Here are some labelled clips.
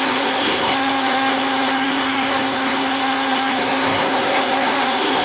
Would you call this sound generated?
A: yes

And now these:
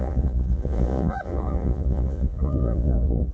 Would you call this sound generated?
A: yes